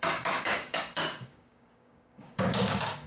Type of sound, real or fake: fake